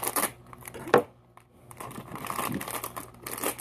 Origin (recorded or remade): recorded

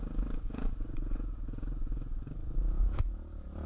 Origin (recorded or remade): remade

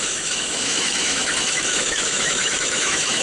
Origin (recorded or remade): remade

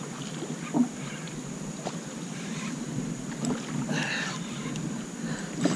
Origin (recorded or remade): remade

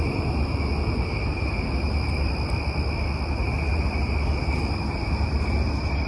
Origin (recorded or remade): recorded